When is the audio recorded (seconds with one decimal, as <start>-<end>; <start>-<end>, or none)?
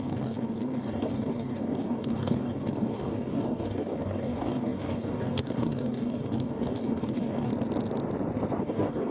7.5-8.6